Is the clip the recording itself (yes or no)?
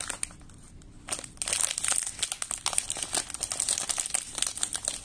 yes